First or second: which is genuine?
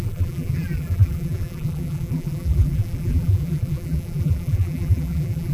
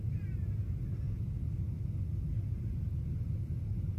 second